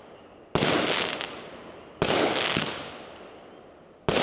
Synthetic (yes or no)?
no